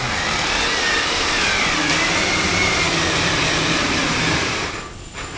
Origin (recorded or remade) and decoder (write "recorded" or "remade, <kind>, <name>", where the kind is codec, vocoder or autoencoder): recorded